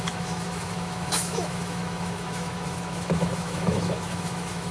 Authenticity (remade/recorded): remade